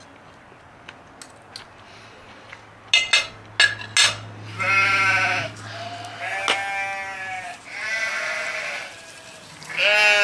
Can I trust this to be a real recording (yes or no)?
yes